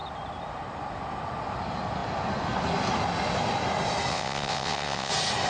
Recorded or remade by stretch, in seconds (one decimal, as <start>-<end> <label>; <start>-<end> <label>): 0.0-4.1 recorded; 4.1-5.1 remade; 5.1-5.5 recorded